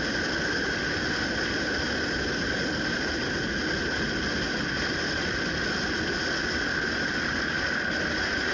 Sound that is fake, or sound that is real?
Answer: real